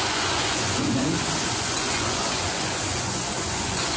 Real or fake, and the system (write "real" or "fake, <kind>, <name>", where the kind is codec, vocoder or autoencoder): fake, vocoder, Vocos